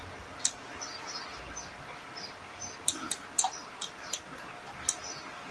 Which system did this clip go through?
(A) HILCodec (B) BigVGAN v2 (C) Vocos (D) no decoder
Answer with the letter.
D